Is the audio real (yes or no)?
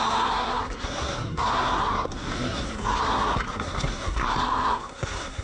no